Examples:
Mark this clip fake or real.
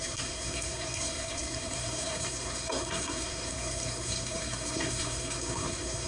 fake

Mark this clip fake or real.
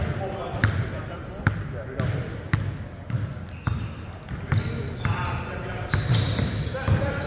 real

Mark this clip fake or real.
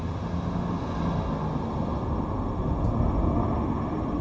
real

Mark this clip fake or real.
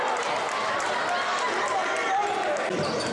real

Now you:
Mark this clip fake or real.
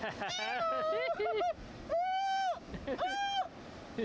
real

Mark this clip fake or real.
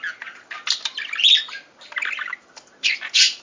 real